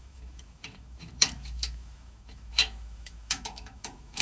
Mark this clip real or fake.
fake